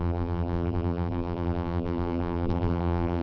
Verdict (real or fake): fake